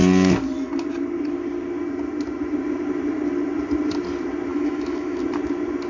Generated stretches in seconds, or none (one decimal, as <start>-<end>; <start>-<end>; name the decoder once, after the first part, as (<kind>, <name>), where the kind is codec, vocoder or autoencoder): 4.5-5.2 (autoencoder, DAC-VAE)